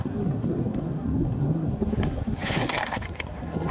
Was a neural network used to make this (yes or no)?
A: yes